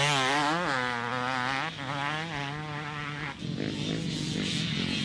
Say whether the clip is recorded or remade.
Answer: recorded